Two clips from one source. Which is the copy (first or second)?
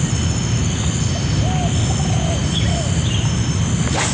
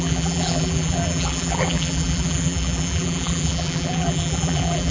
second